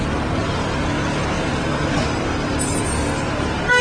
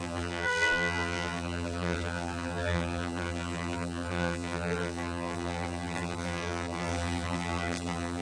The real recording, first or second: first